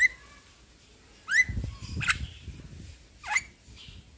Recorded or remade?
recorded